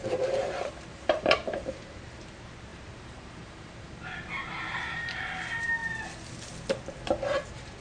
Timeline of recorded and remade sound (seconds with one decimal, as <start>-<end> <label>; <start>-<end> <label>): 0.0-2.3 remade; 2.3-2.7 recorded; 2.7-5.3 remade; 5.3-7.8 recorded